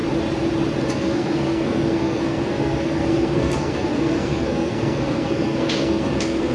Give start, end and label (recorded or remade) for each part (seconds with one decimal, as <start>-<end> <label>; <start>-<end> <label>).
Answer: 0.0-0.9 recorded; 0.9-6.5 remade